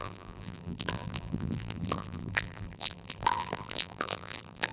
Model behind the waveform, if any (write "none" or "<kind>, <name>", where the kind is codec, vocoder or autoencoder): vocoder, BigVGAN v2